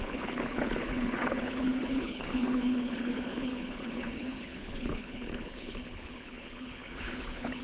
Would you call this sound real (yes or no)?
no